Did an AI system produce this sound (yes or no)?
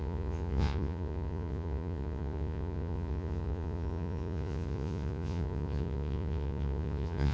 yes